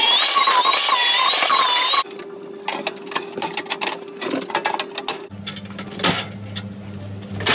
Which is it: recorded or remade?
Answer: recorded